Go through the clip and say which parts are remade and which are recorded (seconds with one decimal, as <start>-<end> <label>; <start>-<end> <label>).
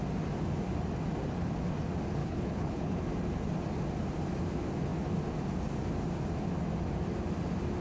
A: 0.0-2.2 recorded; 2.2-3.0 remade; 3.0-7.8 recorded